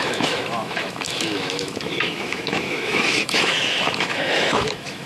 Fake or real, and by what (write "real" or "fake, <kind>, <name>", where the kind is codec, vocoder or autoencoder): fake, autoencoder, DAC-VAE